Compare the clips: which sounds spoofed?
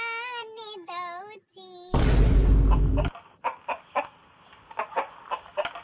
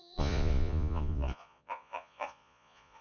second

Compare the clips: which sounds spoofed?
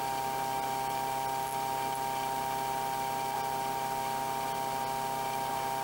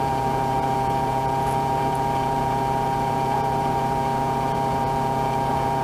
second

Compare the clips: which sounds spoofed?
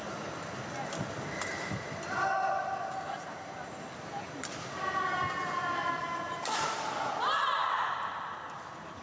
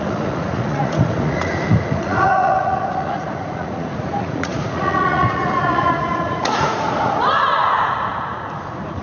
second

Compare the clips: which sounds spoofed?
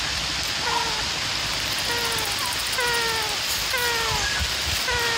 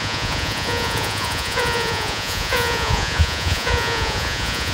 second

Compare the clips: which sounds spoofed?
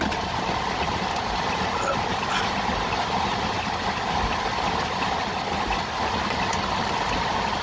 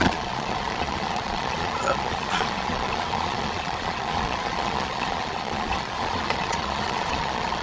second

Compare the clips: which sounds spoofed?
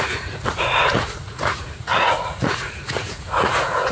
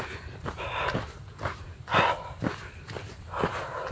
first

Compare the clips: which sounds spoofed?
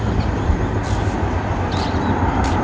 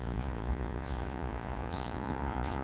second